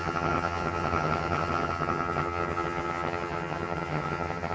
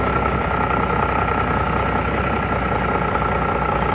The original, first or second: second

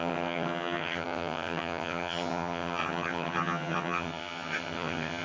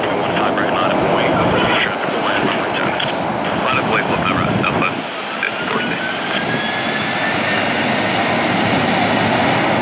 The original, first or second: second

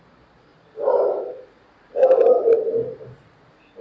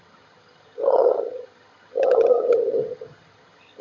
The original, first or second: first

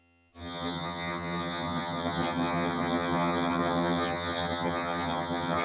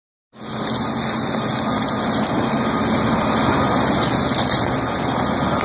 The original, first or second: second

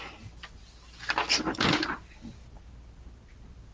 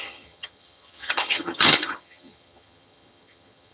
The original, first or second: first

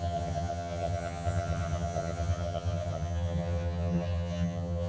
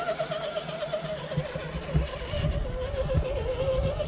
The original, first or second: second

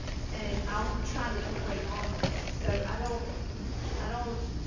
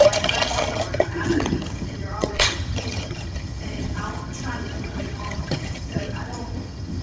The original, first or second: first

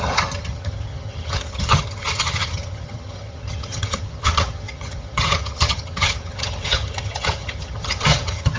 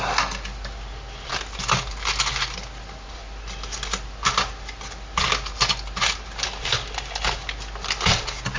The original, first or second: second